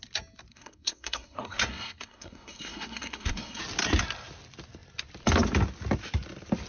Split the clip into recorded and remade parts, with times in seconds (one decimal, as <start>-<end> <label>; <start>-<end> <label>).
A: 0.0-0.5 recorded; 0.5-3.6 remade; 3.6-6.7 recorded